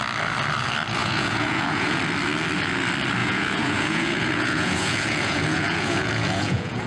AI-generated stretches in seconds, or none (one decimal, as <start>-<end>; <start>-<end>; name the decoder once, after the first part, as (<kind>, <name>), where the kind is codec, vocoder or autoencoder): 1.0-2.0 (vocoder, Vocos); 3.2-6.9